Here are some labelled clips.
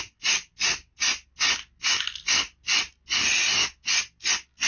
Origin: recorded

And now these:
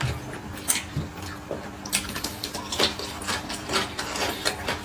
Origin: recorded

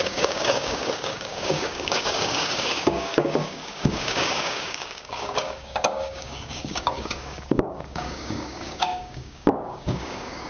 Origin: remade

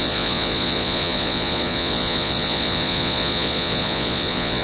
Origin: remade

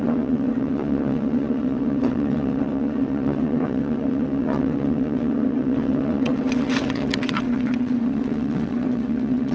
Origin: remade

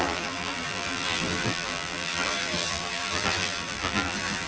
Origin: remade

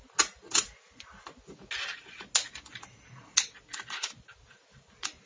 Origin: recorded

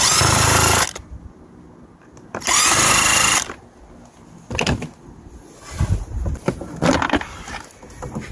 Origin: recorded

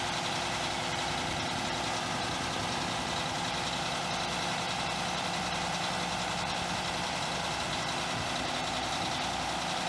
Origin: recorded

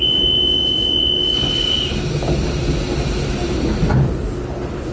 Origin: recorded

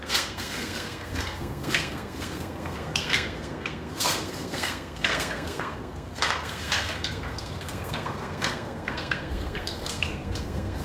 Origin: remade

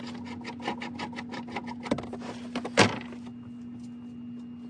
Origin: recorded